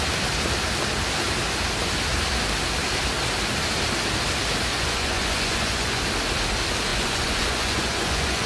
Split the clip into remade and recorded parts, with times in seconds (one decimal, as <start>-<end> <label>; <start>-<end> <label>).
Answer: 0.0-4.7 recorded; 4.7-6.0 remade; 6.0-6.9 recorded; 6.9-8.5 remade